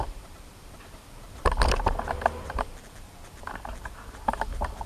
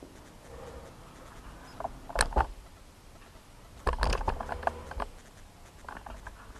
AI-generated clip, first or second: first